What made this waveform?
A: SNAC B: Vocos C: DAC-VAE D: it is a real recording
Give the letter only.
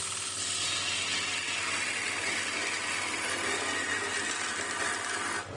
D